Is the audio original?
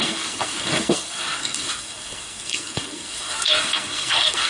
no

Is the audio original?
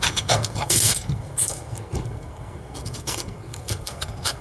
no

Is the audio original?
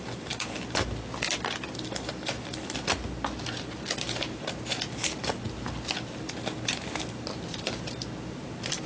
yes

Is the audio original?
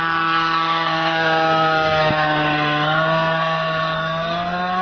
no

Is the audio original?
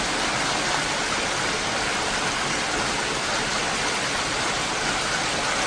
yes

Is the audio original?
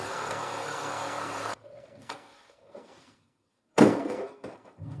no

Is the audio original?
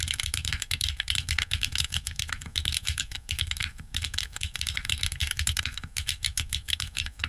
no